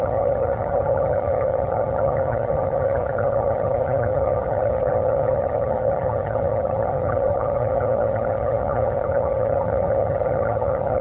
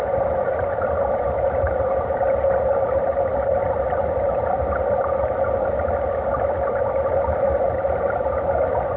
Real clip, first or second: second